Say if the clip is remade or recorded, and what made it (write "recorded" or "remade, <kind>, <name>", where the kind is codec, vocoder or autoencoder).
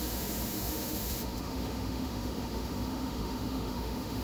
remade, autoencoder, DAC-VAE